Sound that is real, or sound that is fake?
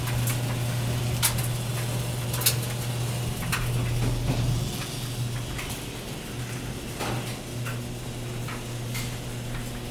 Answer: real